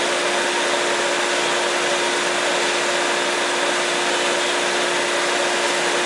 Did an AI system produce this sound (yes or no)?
no